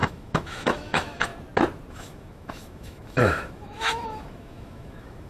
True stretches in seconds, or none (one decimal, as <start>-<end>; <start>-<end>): 1.3-1.9